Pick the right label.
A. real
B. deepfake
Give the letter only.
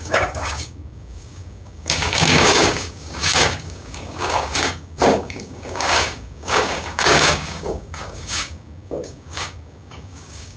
B